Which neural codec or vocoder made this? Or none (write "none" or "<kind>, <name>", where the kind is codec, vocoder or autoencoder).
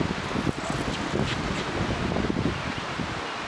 none